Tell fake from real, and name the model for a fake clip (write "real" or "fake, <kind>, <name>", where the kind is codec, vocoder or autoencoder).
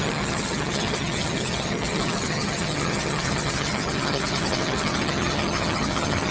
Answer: fake, vocoder, HiFi-GAN